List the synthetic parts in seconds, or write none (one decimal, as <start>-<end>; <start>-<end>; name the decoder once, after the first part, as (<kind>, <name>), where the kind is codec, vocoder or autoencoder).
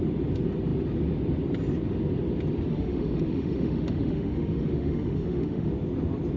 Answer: 2.7-5.7 (autoencoder, DAC-VAE)